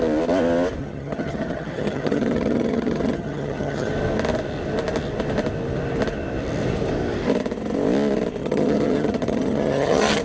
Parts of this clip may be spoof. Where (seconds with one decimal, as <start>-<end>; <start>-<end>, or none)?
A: 0.8-3.9; 8.4-10.2